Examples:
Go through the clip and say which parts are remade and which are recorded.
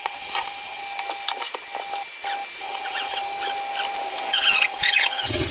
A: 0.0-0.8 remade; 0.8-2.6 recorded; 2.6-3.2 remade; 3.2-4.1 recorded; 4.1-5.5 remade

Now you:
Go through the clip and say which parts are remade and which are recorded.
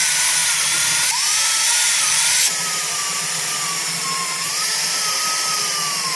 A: 0.0-0.4 recorded; 0.4-4.1 remade; 4.1-4.5 recorded; 4.5-5.6 remade; 5.6-6.2 recorded